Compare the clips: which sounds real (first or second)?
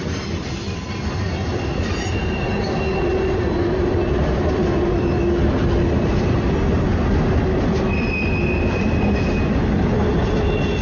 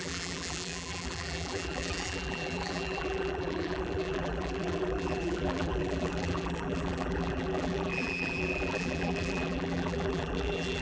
first